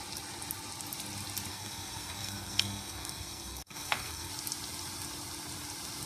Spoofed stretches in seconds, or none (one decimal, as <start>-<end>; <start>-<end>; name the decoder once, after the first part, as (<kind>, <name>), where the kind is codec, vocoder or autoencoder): 1.5-4.3 (codec, SNAC)